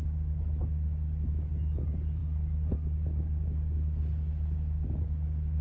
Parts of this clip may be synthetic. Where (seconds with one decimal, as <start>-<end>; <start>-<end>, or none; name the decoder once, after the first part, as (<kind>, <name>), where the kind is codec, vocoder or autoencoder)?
none